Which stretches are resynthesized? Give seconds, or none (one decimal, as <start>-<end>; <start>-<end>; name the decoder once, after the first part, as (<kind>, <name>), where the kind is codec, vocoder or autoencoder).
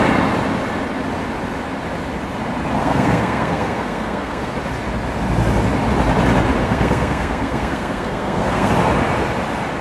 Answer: 2.8-4.5 (codec, SNAC); 6.6-8.7